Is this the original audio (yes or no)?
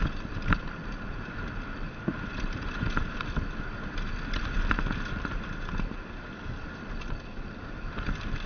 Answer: yes